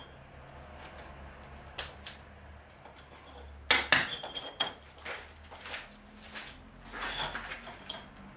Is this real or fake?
real